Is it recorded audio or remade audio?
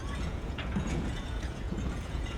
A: remade